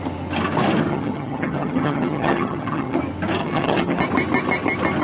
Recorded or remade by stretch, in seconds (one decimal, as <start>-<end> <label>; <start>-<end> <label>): 0.0-0.9 recorded; 0.9-3.0 remade; 3.0-3.4 recorded; 3.4-4.0 remade; 4.0-5.0 recorded